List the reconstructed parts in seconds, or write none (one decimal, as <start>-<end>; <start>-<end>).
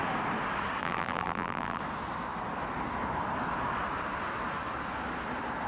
0.8-1.8